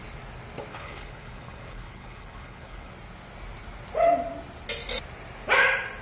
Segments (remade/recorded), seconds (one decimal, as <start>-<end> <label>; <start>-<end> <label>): 0.0-0.7 recorded; 0.7-2.9 remade; 2.9-6.0 recorded